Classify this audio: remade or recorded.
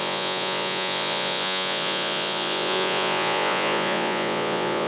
remade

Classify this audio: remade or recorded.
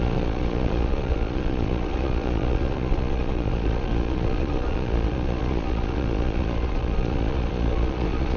remade